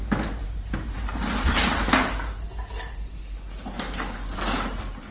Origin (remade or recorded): recorded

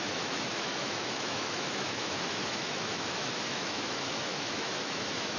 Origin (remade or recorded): remade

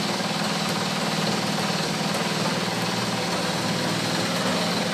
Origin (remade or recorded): recorded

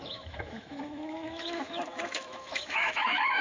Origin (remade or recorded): remade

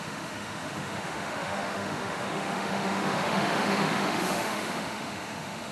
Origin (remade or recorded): remade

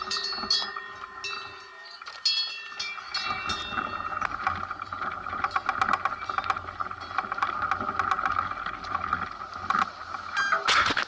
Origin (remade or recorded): recorded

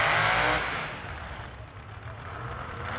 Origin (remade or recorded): recorded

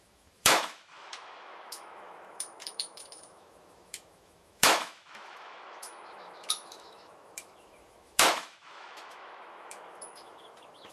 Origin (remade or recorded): remade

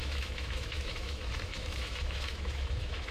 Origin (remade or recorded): remade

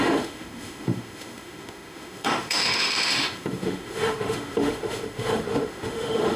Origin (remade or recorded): remade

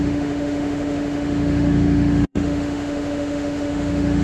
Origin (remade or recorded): remade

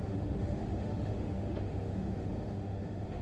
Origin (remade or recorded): remade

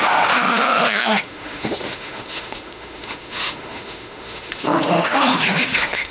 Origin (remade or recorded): remade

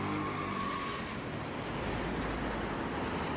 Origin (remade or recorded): recorded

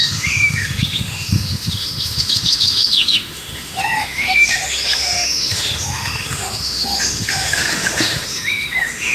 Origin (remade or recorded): remade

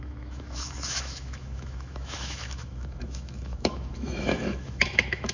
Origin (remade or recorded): remade